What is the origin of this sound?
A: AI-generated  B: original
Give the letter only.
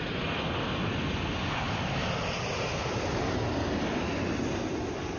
B